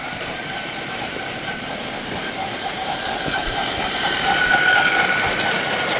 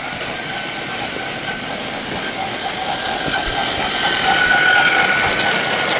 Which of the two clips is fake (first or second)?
first